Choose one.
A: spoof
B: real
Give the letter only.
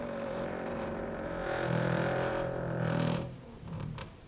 A